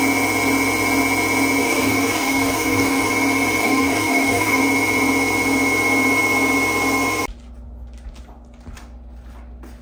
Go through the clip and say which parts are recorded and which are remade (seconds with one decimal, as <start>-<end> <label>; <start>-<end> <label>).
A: 0.0-1.6 recorded; 1.6-3.1 remade; 3.1-3.6 recorded; 3.6-4.6 remade; 4.6-9.8 recorded